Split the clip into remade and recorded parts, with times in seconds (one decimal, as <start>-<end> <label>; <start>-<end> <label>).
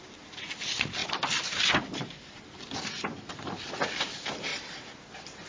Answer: 0.0-5.5 recorded